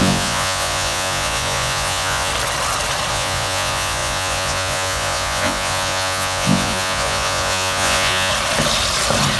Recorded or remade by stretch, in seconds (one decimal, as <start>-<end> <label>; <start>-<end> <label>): 0.0-2.3 remade; 2.3-3.1 recorded; 3.1-8.3 remade; 8.3-9.4 recorded